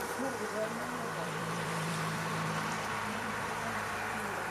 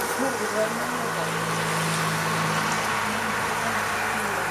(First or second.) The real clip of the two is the second